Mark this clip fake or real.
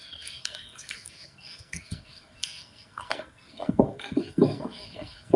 fake